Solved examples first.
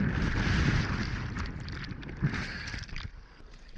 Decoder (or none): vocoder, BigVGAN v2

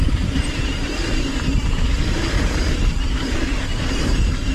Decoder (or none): vocoder, BigVGAN v2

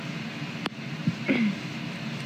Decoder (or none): none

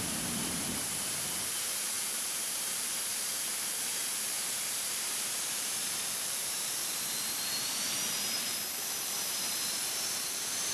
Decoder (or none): vocoder, BigVGAN v2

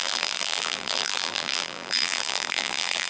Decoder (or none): vocoder, BigVGAN v2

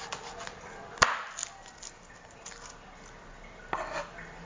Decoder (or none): none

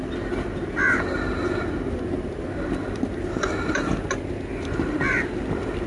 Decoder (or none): none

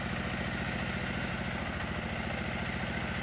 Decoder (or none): none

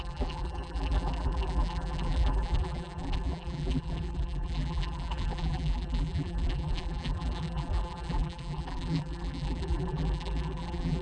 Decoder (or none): vocoder, BigVGAN v2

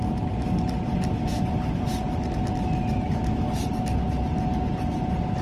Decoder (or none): none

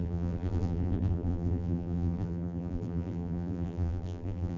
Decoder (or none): vocoder, BigVGAN v2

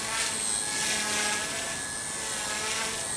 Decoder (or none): none